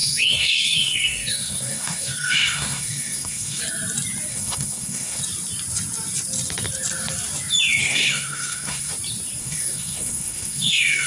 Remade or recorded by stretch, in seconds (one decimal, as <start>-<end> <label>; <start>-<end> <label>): 0.0-3.6 remade; 3.6-4.3 recorded; 4.3-5.2 remade; 5.2-7.8 recorded; 7.8-8.9 remade; 8.9-9.4 recorded; 9.4-11.1 remade